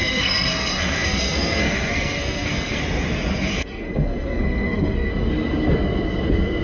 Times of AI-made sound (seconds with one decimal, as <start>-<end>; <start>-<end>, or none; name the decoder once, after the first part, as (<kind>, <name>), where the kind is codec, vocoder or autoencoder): 0.0-2.8 (codec, SNAC); 3.5-5.1